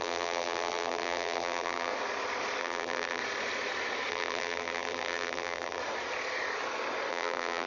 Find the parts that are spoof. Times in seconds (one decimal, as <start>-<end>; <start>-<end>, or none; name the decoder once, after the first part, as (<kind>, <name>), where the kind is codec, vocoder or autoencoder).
0.0-1.9 (vocoder, BigVGAN v2); 2.6-3.2; 4.1-5.8; 7.1-7.7